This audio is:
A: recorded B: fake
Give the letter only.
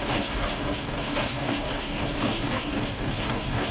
B